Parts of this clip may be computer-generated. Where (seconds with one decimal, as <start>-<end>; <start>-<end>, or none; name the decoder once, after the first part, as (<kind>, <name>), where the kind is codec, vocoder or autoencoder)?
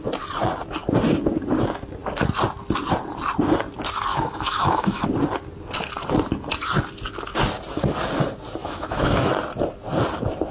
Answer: 4.1-5.0 (autoencoder, DAC-VAE); 8.6-9.3